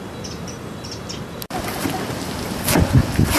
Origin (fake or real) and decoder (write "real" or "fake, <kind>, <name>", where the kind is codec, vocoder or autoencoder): real